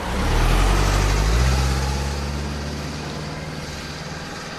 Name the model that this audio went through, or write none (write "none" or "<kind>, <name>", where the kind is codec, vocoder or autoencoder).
none